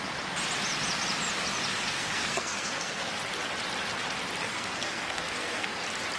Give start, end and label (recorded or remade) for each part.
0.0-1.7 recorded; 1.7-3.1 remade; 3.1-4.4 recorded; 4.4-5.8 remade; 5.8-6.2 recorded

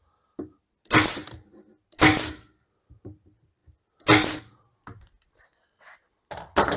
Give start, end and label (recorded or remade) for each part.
0.0-6.8 recorded

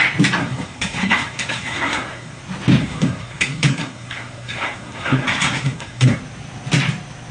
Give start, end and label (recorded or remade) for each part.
0.0-0.4 recorded; 0.4-2.4 remade; 2.4-2.8 recorded; 2.8-6.2 remade; 6.2-7.3 recorded

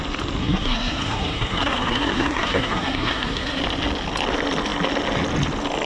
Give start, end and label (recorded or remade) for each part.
0.0-0.4 recorded; 0.4-3.6 remade; 3.6-5.9 recorded

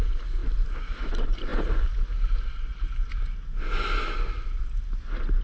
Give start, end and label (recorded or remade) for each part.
0.0-5.4 recorded

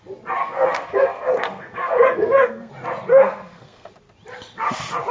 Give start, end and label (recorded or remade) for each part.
0.0-0.4 recorded; 0.4-2.7 remade; 2.7-3.1 recorded; 3.1-3.9 remade; 3.9-5.1 recorded

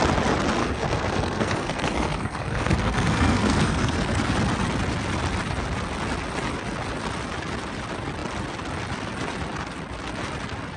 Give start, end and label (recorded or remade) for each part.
0.0-0.6 recorded; 0.6-4.3 remade; 4.3-10.8 recorded

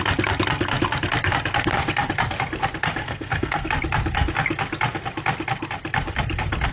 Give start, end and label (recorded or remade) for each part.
0.0-3.0 recorded; 3.0-3.7 remade; 3.7-6.7 recorded